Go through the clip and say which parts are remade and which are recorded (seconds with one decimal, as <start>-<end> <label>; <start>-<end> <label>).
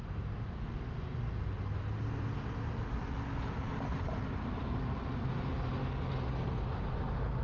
0.0-7.4 recorded